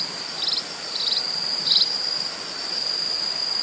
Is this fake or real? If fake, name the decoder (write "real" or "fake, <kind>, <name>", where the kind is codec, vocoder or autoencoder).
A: real